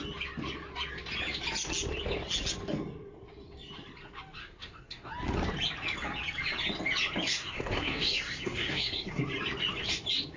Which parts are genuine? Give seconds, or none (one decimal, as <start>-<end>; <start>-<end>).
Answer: 0.0-4.4; 5.1-7.3; 9.2-10.4